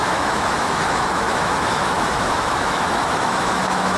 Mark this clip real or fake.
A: fake